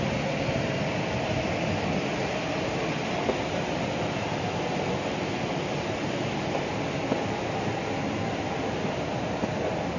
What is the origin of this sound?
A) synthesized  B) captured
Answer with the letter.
B